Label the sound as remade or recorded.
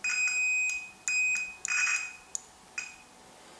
recorded